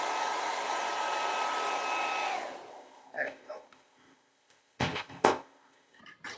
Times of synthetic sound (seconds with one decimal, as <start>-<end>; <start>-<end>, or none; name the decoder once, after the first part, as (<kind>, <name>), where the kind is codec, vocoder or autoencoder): 2.7-6.0 (codec, ZipCodec)